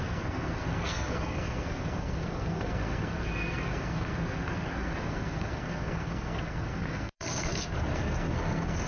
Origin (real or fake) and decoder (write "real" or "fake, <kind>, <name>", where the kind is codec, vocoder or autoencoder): fake, codec, SNAC